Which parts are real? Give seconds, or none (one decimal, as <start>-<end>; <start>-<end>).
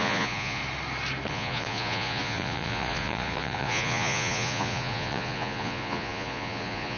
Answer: 0.6-1.3